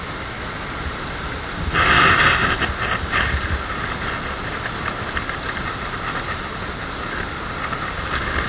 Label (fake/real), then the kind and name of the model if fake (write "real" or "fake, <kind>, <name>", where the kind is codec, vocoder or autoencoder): real